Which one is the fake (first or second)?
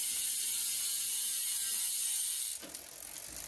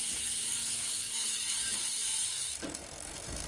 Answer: second